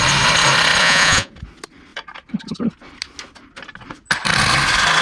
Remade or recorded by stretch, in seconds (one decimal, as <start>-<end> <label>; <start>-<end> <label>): 0.0-0.8 recorded; 0.8-1.3 remade; 1.3-5.0 recorded